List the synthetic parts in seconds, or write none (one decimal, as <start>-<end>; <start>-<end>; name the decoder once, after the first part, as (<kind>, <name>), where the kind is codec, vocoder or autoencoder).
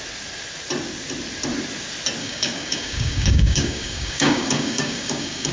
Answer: 2.2-5.5 (codec, DAC)